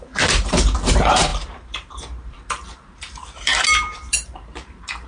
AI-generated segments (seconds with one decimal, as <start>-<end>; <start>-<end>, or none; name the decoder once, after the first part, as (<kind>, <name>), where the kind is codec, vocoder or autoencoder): 0.0-5.1 (vocoder, BigVGAN v2)

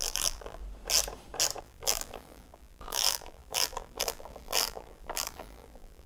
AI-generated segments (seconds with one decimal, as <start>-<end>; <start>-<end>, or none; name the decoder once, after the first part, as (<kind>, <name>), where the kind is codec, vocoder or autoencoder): 0.0-0.6 (vocoder, BigVGAN v2); 1.6-6.1